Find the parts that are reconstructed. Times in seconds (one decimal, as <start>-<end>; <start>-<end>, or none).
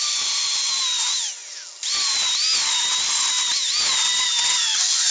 none